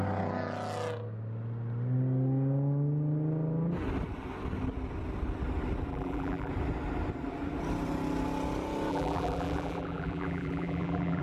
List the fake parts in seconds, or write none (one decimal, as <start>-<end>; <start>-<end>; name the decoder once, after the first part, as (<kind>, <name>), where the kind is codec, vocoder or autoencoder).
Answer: 5.9-6.5 (vocoder, BigVGAN v2); 8.9-11.2